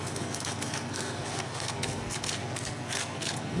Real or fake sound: fake